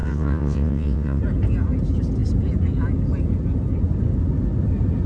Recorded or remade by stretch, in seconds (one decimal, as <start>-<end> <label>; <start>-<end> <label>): 0.0-1.2 remade; 1.2-5.1 recorded